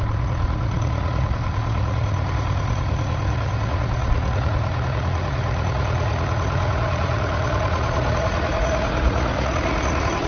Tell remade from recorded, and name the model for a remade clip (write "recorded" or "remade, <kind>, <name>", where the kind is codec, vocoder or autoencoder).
remade, vocoder, Vocos